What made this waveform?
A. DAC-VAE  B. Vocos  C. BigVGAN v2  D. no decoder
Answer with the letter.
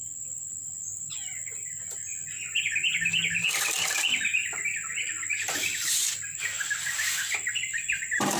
D